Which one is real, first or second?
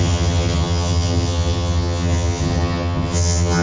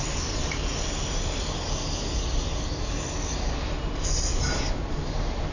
second